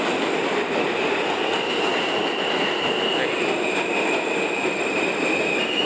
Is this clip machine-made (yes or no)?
no